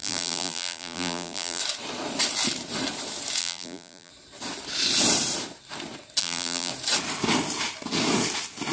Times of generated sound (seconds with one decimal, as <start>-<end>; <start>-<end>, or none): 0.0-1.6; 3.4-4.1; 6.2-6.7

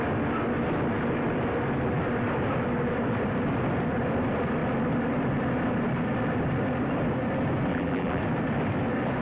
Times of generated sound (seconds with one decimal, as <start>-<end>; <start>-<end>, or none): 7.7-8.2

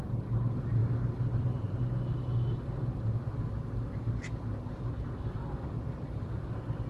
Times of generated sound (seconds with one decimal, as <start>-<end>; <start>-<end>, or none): 0.8-1.8

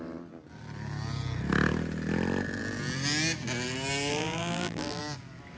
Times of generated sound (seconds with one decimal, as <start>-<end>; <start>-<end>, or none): 4.1-5.0

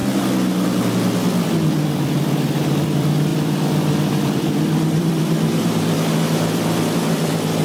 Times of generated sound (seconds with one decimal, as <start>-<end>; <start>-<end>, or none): 1.4-7.6

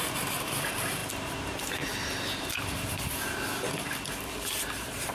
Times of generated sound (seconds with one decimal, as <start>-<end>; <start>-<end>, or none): 0.0-1.0; 4.1-5.1

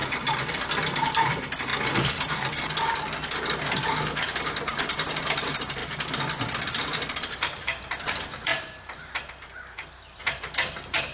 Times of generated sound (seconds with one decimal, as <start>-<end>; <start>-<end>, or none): 0.0-1.7; 5.1-11.1

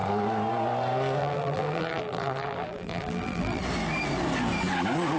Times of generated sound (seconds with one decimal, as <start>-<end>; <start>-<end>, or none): 1.2-3.6